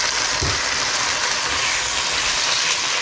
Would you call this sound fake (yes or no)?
no